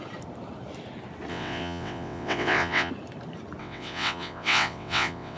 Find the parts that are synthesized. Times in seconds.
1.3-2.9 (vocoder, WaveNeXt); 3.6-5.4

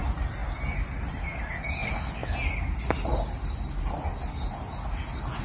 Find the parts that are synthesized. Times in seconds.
none